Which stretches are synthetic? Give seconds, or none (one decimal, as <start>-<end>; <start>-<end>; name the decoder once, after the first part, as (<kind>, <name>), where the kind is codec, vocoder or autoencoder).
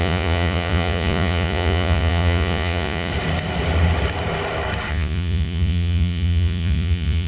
0.0-3.1 (vocoder, Vocos); 4.9-7.3